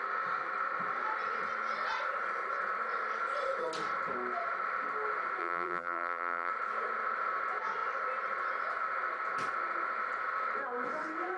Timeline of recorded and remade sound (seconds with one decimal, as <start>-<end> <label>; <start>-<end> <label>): 0.0-5.4 recorded; 5.4-6.5 remade; 6.5-11.4 recorded